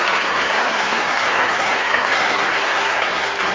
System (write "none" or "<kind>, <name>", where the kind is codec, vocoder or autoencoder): codec, SNAC